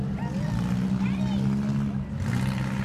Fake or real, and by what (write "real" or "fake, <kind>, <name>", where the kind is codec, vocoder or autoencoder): real